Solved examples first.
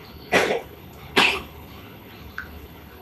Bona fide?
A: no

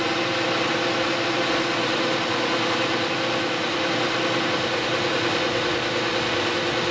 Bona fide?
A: yes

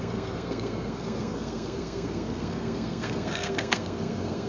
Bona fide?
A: no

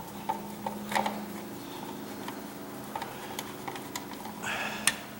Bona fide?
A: yes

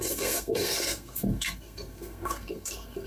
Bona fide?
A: no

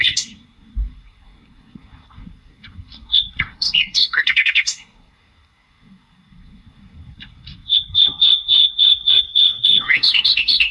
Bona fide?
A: no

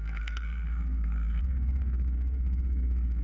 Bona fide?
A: no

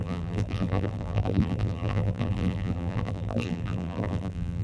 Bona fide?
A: no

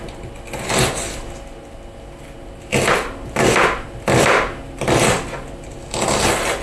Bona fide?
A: yes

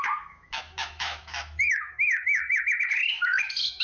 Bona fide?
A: no